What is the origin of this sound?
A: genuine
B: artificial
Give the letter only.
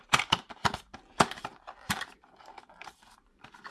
B